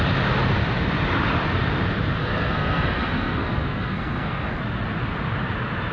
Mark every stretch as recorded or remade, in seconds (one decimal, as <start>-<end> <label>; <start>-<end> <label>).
0.0-2.2 recorded; 2.2-4.6 remade; 4.6-5.9 recorded